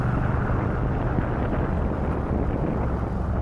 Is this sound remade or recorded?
recorded